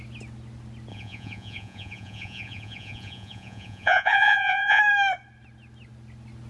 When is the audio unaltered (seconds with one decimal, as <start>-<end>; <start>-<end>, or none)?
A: 0.0-0.9; 4.8-6.5